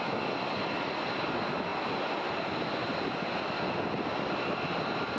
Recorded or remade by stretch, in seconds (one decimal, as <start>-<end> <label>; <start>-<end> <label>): 0.0-5.2 recorded